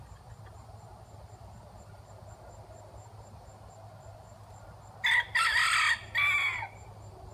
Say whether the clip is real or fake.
real